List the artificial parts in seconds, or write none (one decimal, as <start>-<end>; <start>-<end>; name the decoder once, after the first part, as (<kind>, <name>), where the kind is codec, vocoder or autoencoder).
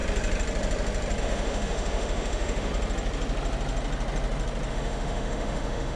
1.2-2.7 (autoencoder, DAC-VAE); 4.7-6.0